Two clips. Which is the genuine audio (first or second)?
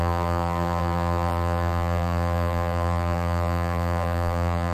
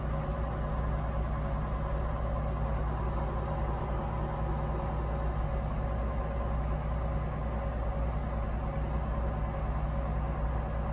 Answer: second